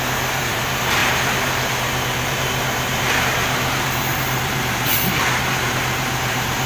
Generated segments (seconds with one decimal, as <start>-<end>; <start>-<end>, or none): 0.0-6.7